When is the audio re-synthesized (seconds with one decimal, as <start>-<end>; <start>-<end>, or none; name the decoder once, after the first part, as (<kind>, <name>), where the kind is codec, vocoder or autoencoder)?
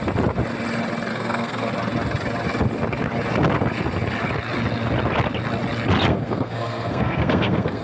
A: 1.1-1.7 (codec, SNAC); 6.1-7.8